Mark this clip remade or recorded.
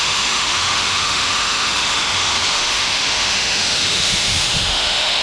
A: remade